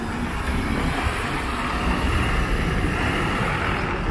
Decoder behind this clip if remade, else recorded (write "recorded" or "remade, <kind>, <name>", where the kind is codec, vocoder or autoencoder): recorded